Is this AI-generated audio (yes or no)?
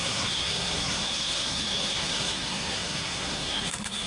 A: yes